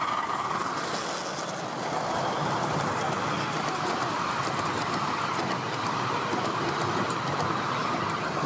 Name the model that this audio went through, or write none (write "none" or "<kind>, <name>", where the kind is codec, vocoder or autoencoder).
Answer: none